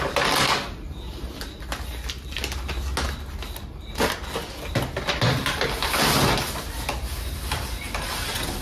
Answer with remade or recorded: recorded